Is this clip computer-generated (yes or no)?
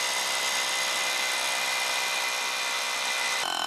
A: no